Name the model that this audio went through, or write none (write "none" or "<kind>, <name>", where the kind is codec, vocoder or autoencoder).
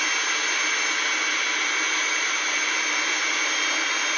none